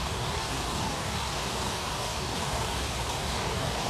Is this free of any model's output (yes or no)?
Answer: no